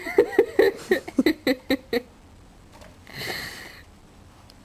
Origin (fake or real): fake